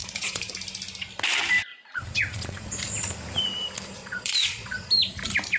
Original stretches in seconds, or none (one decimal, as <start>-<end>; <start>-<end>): 0.5-1.7; 3.0-4.0; 4.9-5.6